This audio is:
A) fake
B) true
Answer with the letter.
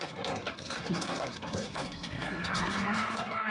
A